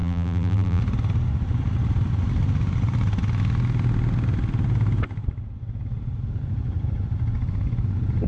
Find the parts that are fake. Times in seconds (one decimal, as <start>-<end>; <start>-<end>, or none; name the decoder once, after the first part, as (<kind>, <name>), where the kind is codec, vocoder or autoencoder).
0.0-0.8 (vocoder, BigVGAN v2)